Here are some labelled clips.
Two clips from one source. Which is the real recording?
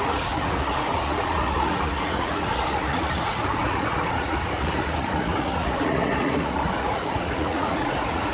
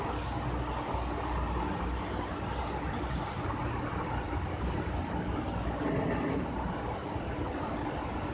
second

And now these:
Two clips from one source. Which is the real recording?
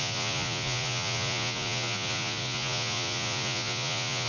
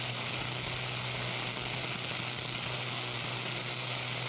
second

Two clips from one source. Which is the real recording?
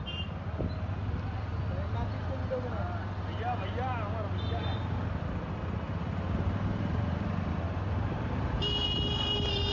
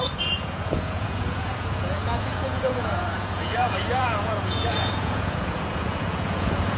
first